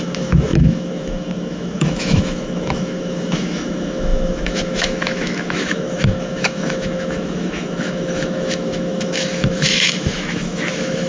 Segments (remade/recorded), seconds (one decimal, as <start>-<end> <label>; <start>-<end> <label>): 0.0-11.1 remade